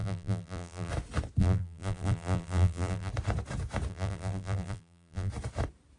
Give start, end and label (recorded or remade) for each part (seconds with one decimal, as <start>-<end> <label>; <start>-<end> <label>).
0.0-0.9 remade; 0.9-1.4 recorded; 1.4-3.1 remade; 3.1-3.9 recorded; 3.9-5.3 remade; 5.3-6.0 recorded